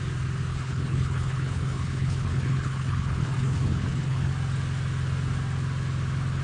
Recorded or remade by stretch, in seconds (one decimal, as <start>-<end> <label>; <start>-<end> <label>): 0.0-0.5 recorded; 0.5-4.3 remade; 4.3-6.4 recorded